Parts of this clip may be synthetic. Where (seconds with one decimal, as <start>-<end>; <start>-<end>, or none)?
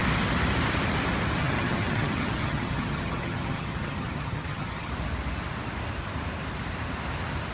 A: 1.4-4.9